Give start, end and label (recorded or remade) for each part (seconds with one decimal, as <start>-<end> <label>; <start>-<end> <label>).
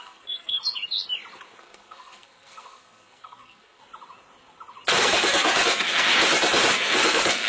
0.0-0.6 remade; 0.6-1.6 recorded; 1.6-3.8 remade; 3.8-4.9 recorded; 4.9-6.1 remade; 6.1-6.7 recorded; 6.7-7.5 remade